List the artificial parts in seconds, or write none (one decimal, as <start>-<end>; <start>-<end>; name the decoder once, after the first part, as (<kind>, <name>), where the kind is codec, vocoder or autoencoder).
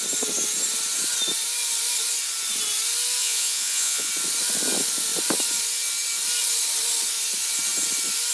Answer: 3.2-4.1 (vocoder, Vocos)